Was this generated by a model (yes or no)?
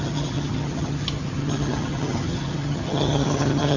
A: yes